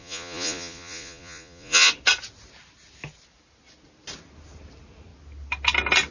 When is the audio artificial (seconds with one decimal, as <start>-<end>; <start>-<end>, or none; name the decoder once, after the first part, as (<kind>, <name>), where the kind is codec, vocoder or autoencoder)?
0.0-1.9 (vocoder, Vocos)